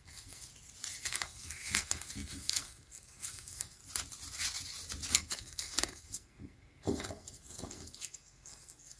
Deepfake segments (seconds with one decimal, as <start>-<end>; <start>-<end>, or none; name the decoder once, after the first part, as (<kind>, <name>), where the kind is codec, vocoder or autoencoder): 0.0-0.5 (codec, SNAC); 1.0-3.8; 5.1-9.0